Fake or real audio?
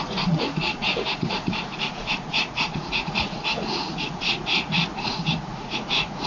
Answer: fake